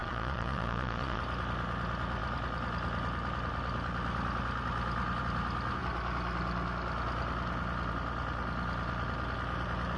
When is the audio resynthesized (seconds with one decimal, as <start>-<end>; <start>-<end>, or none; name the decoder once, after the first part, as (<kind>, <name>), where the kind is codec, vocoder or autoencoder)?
0.0-1.2 (vocoder, Vocos)